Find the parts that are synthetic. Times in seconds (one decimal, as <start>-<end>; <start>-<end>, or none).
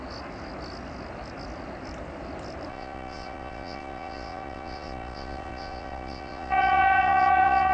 2.7-7.7